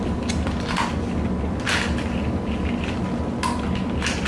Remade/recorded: recorded